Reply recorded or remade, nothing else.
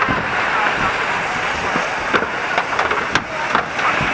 recorded